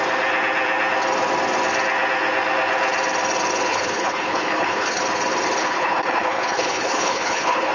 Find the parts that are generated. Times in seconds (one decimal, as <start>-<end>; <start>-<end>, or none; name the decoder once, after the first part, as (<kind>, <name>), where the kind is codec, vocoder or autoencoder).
3.7-5.0 (codec, HILCodec); 5.6-7.7